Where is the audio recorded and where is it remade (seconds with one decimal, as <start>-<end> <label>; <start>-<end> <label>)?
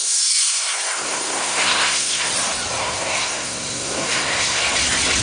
0.0-2.3 remade; 2.3-2.8 recorded; 2.8-4.6 remade; 4.6-5.2 recorded